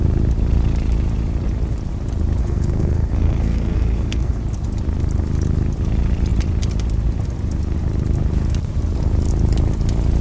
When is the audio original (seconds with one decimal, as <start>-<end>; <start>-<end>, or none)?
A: 0.0-2.4; 4.4-10.2